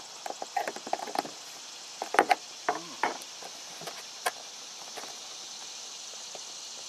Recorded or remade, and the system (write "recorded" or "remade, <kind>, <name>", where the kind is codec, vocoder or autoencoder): remade, vocoder, BigVGAN v2